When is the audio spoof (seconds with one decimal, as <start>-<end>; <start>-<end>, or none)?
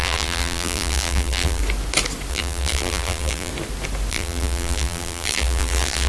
0.0-1.6; 2.3-3.5; 4.1-6.1